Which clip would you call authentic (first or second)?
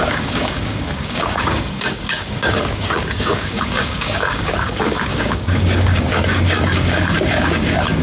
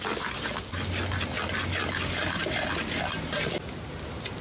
second